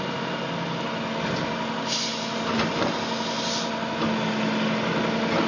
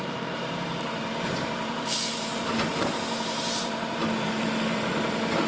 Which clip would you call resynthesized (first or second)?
second